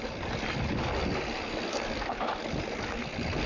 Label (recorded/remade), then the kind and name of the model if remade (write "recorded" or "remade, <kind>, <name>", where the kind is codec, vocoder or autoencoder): recorded